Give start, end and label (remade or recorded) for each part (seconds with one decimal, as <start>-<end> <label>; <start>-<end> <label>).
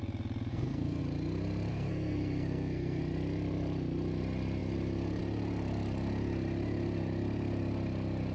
0.0-0.5 recorded; 0.5-1.0 remade; 1.0-1.7 recorded; 1.7-3.0 remade; 3.0-8.3 recorded